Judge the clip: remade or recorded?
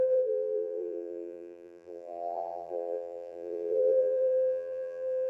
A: remade